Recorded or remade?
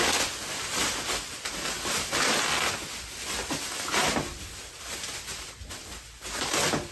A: recorded